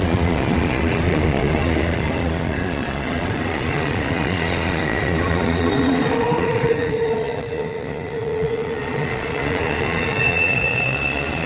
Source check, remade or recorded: remade